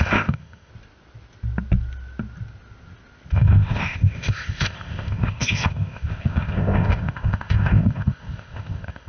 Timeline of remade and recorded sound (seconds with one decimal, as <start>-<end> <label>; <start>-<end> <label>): 0.0-0.7 remade; 0.7-3.3 recorded; 3.3-9.1 remade